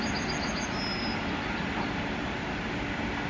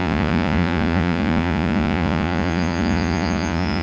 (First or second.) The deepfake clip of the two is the second